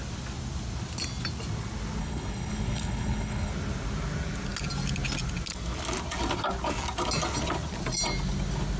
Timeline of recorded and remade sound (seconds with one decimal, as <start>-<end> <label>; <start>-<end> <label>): 0.0-2.0 recorded; 2.0-3.5 remade; 3.5-8.8 recorded